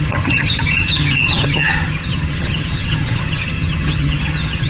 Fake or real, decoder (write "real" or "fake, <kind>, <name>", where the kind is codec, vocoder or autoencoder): fake, vocoder, HiFi-GAN